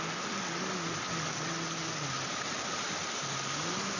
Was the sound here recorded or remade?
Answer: recorded